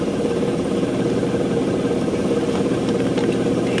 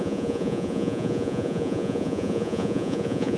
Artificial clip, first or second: second